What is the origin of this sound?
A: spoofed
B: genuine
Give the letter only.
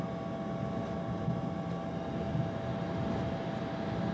B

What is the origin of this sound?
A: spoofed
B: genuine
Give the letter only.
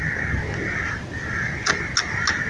B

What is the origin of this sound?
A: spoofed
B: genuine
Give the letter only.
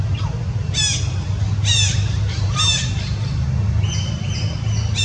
B